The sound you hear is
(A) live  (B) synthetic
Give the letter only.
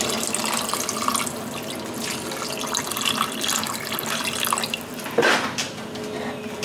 A